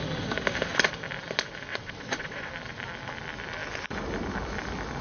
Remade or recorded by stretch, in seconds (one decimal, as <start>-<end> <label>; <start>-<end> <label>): 0.0-1.7 recorded; 1.7-2.5 remade; 2.5-5.0 recorded